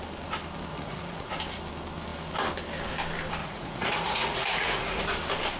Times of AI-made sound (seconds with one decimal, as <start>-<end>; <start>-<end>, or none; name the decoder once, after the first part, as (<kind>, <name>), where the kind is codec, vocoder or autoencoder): 0.7-1.3 (vocoder, Vocos); 3.4-5.0